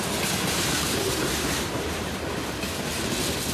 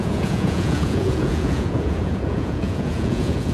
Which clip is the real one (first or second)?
first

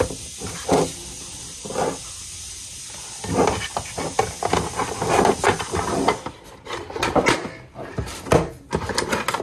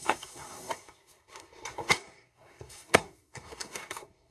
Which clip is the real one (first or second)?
first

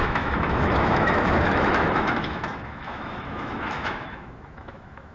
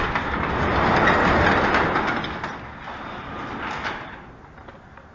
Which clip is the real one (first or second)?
second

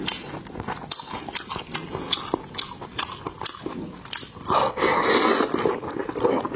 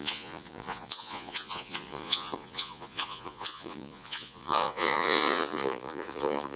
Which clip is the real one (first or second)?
first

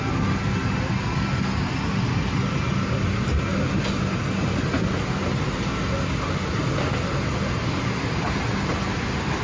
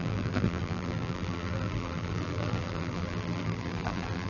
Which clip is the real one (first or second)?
first